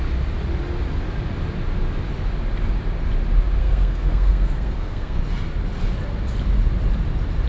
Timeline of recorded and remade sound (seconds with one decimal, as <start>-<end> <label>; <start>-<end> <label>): 0.0-3.6 recorded; 3.6-5.2 remade; 5.2-7.5 recorded